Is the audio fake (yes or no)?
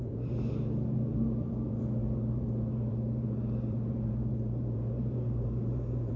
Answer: yes